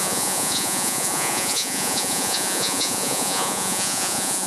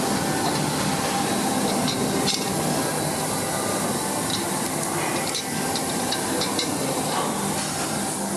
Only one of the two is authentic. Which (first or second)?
second